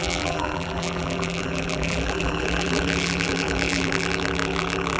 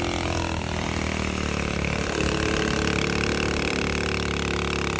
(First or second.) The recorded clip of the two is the second